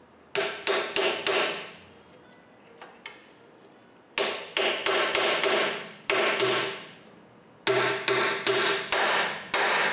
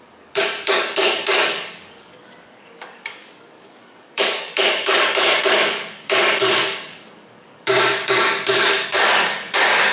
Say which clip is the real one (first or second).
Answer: first